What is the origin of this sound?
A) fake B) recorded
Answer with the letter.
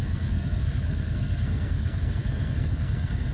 A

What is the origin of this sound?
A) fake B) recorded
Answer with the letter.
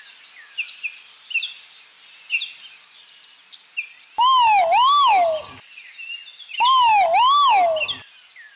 B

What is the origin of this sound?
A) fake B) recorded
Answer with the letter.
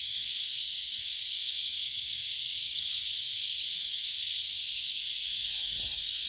A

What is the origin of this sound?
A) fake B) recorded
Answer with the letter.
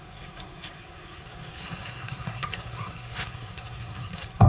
A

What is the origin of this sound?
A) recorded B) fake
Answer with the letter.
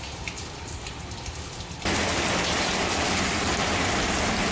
A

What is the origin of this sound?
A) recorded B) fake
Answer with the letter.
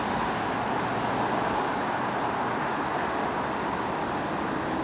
A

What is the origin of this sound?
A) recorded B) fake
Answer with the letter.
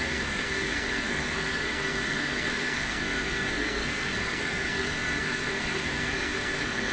B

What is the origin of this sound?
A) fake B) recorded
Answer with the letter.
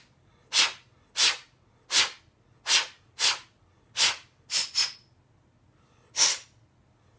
B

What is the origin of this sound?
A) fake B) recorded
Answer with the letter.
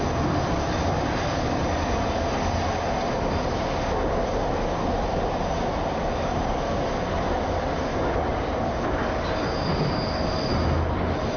B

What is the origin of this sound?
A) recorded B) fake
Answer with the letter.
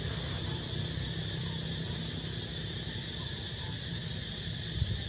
A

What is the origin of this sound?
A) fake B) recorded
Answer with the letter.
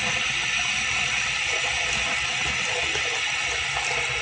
B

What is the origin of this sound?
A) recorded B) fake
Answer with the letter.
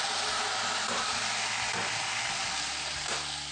A